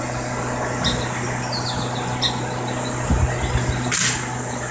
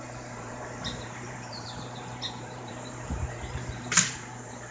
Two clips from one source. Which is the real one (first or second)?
first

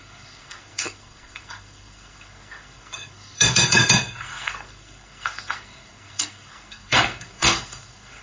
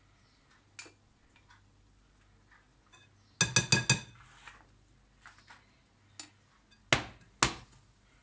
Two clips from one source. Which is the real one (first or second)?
second